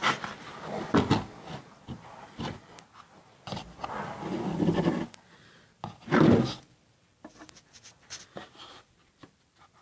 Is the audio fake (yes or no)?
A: no